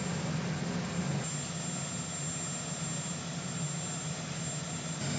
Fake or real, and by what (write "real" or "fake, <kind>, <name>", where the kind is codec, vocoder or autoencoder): real